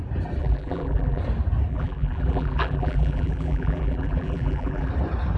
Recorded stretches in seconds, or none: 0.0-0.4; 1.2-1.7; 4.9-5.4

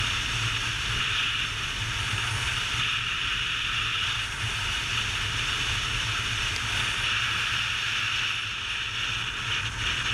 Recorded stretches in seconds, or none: 0.0-10.1

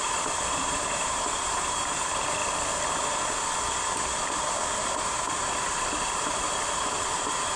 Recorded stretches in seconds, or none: 2.4-5.0

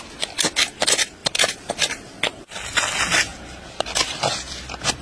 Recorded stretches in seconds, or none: 0.0-1.2; 1.7-3.3; 4.2-5.0

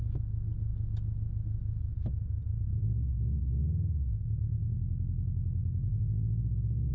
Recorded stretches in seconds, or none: 0.0-6.9

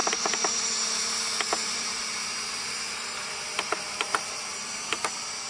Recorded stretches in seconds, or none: 1.1-1.6; 4.5-5.5

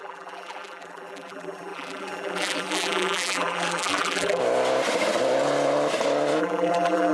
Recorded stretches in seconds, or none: 4.4-6.4